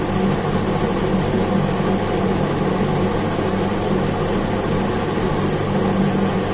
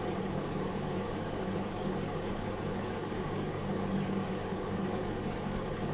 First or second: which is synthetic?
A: second